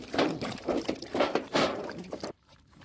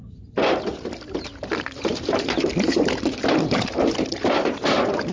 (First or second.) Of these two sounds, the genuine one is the second